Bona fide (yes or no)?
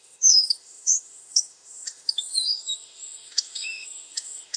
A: no